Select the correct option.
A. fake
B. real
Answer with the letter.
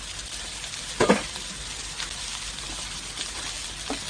B